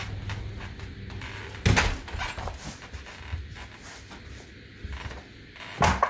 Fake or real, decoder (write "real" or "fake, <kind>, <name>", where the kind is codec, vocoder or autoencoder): real